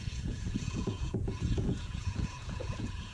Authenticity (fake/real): fake